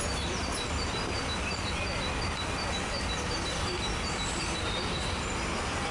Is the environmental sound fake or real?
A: fake